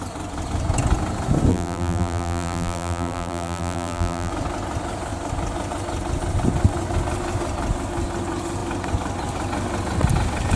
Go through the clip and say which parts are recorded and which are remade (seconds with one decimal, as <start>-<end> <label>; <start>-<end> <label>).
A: 0.0-1.5 recorded; 1.5-4.3 remade; 4.3-10.6 recorded